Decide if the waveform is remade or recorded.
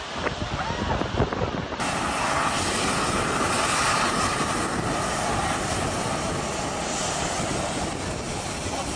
recorded